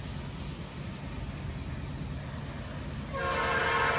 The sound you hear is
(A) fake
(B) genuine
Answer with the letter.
B